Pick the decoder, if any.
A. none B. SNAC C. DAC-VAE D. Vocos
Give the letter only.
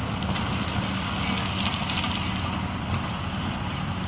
A